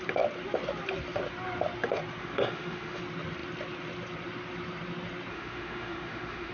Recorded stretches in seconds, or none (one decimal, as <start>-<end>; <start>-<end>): 0.0-2.2; 3.0-5.3